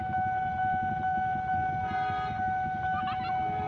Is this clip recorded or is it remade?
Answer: recorded